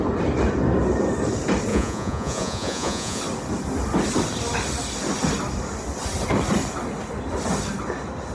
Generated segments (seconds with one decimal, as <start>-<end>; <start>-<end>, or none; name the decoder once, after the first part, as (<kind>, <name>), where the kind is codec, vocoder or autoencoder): 1.7-3.2 (vocoder, Vocos)